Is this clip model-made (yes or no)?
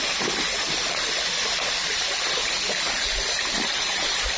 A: no